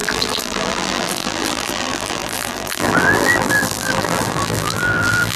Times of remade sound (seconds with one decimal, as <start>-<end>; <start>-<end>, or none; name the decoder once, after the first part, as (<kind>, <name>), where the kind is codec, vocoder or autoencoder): 0.0-5.4 (vocoder, BigVGAN v2)